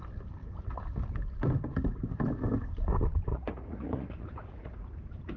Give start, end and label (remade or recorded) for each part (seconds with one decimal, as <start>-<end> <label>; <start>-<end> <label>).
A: 0.0-3.3 recorded; 3.3-5.0 remade; 5.0-5.4 recorded